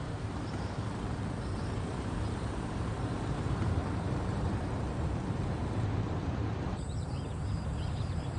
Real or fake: fake